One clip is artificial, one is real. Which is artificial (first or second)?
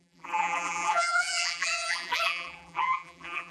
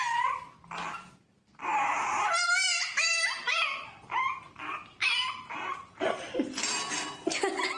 first